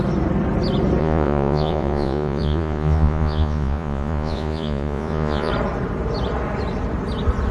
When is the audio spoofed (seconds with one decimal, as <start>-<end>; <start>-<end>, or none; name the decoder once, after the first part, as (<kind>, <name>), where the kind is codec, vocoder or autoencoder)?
1.0-5.5 (vocoder, Vocos)